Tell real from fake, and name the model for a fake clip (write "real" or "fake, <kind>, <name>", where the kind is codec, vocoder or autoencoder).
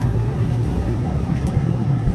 fake, codec, SNAC